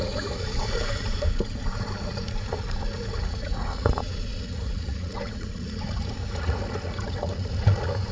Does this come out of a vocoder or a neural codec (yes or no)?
yes